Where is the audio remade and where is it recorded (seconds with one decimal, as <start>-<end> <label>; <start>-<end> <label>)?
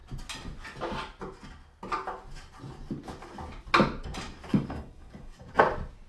0.0-4.5 recorded; 4.5-5.6 remade; 5.6-6.1 recorded